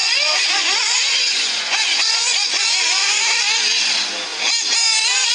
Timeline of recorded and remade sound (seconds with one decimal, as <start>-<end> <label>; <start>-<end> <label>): 0.0-3.2 remade; 3.2-5.3 recorded